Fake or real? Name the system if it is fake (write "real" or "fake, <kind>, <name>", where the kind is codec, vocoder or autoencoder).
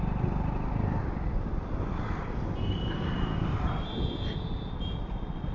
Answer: real